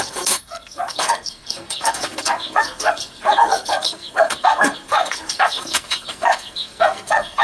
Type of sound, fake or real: fake